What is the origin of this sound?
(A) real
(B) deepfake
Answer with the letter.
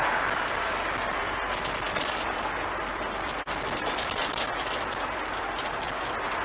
B